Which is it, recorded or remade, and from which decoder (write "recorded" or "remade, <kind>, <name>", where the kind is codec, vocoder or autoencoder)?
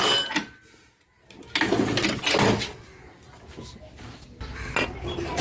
recorded